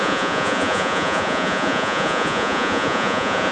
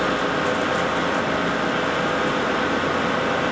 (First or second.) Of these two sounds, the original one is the second